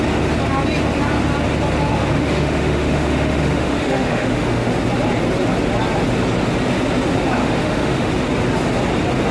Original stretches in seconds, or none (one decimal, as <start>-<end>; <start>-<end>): 0.0-1.9; 4.7-7.4; 8.1-9.3